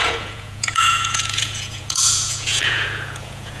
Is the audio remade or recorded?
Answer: remade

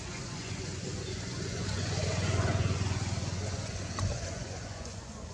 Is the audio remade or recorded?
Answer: remade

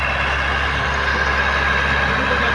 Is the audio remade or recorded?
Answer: recorded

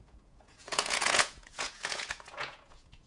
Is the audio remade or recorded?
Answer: remade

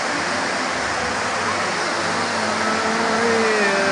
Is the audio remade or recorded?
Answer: recorded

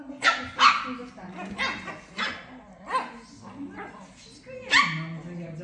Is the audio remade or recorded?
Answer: recorded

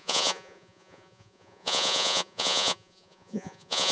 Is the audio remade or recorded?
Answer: remade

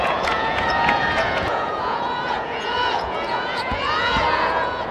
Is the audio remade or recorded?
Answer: remade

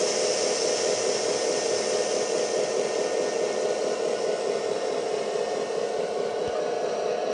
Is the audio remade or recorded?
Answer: recorded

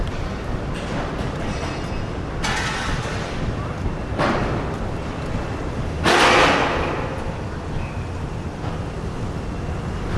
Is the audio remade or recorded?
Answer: recorded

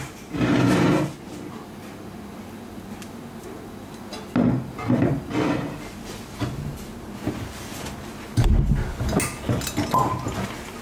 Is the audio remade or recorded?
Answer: recorded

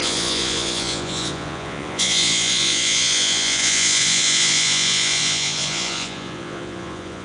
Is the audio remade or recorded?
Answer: remade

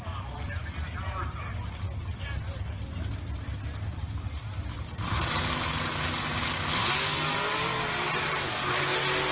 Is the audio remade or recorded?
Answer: recorded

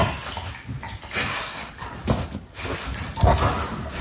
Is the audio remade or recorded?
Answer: recorded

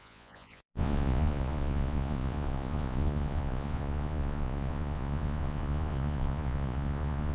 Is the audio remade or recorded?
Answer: remade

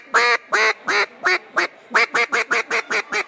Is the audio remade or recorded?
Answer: recorded